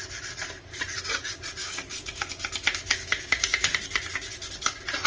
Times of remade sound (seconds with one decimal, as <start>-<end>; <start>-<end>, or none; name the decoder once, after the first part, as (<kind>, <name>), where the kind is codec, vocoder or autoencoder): 1.6-2.3 (codec, DAC); 2.9-3.7